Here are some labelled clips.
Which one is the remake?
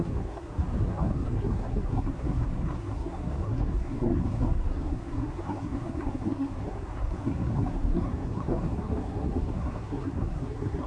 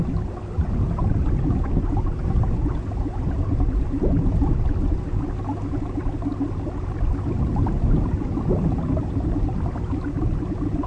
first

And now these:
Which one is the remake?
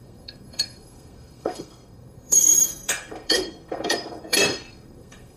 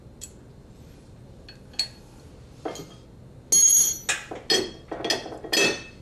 first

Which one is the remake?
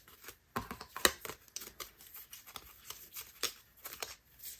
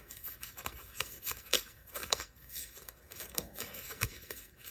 second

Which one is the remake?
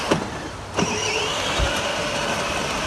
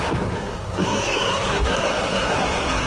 second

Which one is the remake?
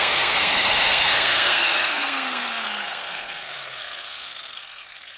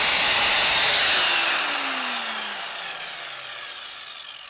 first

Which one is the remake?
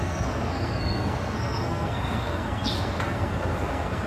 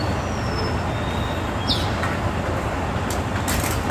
first